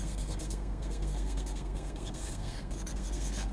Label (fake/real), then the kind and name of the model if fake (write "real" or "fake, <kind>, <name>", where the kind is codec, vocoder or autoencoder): fake, codec, SNAC